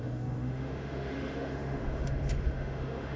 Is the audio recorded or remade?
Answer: remade